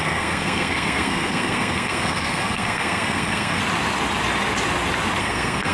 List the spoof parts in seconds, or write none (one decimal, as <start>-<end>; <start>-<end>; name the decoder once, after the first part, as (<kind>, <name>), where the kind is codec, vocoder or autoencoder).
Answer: 0.0-3.6 (codec, SNAC); 5.2-5.7